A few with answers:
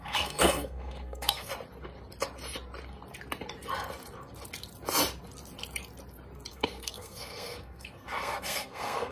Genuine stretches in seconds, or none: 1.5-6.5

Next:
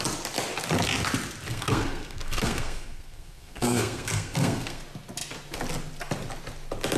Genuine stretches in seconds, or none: 0.0-1.5; 4.8-7.0

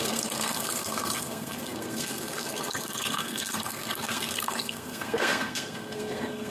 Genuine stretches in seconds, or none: none

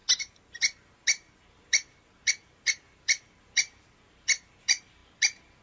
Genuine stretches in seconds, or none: 0.0-5.6

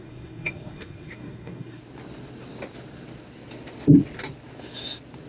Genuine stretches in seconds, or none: 1.8-5.3

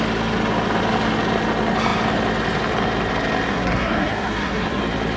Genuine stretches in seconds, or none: 0.0-3.5; 4.8-5.2

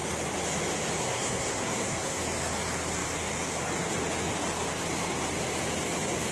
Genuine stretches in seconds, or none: 0.0-1.0; 2.2-6.3